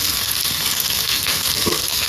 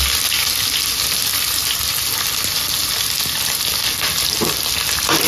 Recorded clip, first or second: second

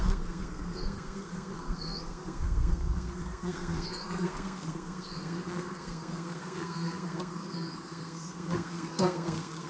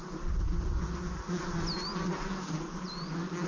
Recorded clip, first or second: second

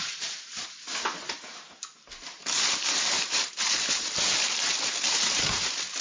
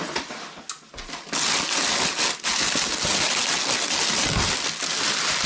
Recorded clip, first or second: second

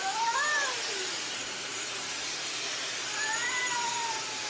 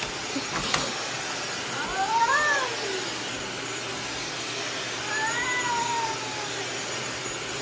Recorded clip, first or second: second